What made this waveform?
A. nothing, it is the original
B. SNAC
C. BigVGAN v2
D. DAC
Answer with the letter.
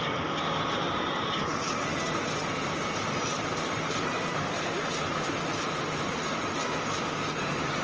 A